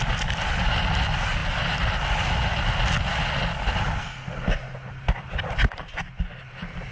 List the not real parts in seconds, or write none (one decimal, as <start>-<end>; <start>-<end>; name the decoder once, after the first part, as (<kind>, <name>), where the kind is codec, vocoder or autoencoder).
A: 4.0-4.5 (codec, SNAC)